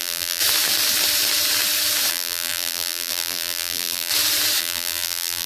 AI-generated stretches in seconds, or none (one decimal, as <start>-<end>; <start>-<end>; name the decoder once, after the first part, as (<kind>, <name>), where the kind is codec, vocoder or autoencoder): 0.0-0.4 (vocoder, BigVGAN v2); 2.1-4.1; 4.6-5.5